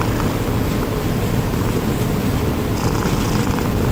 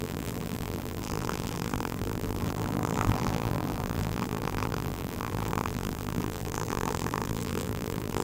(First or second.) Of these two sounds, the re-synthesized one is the second